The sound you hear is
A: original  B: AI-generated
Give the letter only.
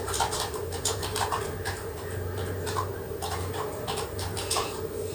B